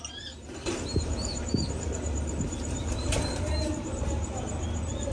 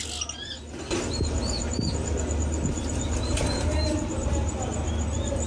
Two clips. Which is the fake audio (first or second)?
first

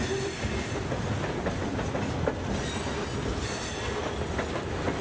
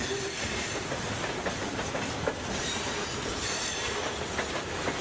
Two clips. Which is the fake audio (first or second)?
second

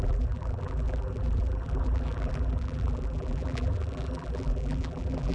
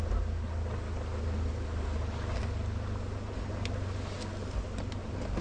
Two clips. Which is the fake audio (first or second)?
first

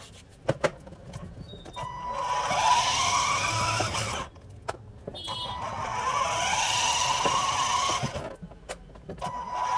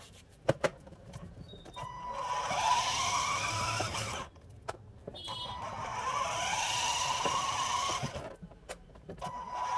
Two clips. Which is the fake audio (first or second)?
second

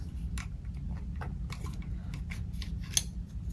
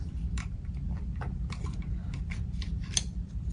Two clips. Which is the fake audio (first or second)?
second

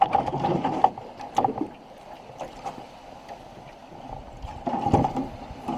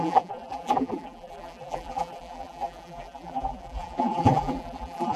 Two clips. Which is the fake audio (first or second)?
second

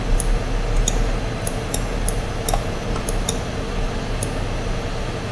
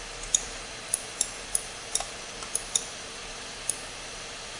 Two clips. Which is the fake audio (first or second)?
second